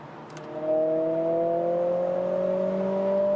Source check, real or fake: real